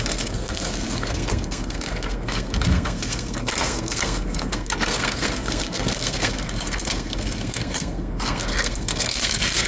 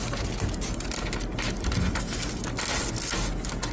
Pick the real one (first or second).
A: second